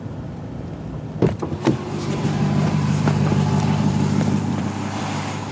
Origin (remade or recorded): remade